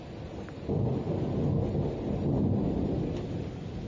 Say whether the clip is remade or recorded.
recorded